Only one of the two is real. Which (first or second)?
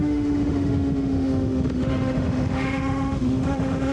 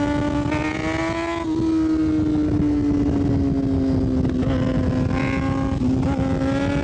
second